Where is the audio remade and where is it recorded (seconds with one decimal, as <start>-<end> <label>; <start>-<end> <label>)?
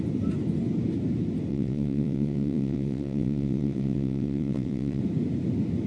0.0-1.5 recorded; 1.5-5.0 remade; 5.0-5.9 recorded